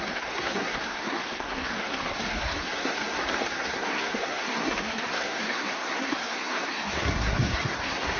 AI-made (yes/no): yes